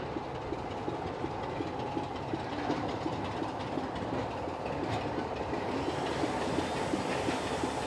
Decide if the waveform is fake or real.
real